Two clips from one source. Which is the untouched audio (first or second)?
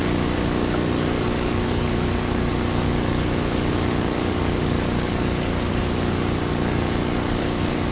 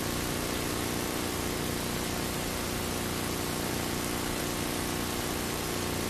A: second